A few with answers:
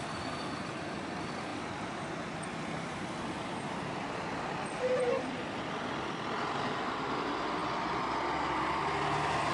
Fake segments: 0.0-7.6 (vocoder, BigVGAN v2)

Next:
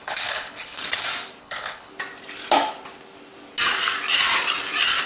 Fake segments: 0.0-0.8 (codec, HILCodec); 1.4-1.9

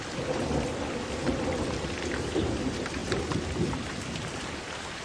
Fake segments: none

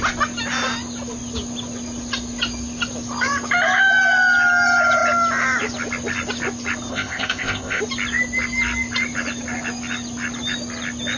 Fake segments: 6.9-7.8 (codec, ZipCodec)